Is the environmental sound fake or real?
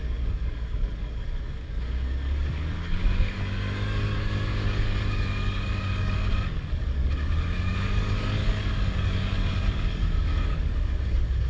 fake